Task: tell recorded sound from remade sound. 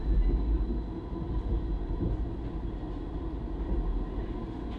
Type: recorded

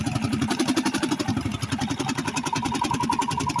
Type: recorded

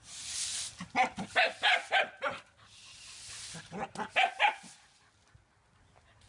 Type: recorded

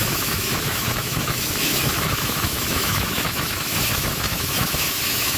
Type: remade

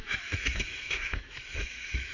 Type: remade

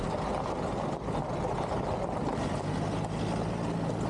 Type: recorded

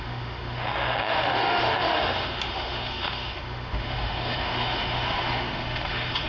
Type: remade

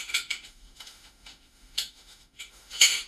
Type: remade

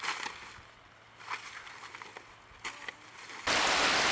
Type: recorded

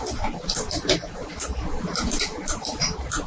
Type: recorded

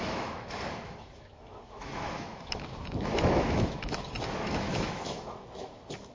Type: remade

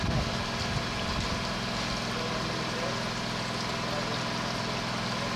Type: recorded